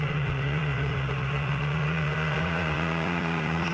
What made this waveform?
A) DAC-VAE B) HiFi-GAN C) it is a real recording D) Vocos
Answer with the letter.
D